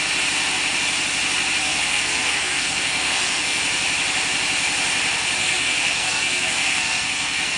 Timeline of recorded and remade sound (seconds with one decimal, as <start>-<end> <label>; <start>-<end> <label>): 0.0-1.6 recorded; 1.6-3.6 remade; 3.6-5.4 recorded; 5.4-7.6 remade